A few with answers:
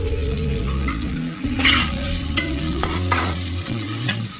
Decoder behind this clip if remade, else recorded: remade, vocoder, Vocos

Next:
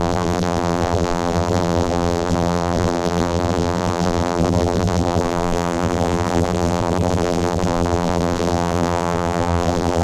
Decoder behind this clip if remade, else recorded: remade, vocoder, BigVGAN v2